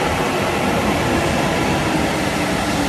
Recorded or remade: recorded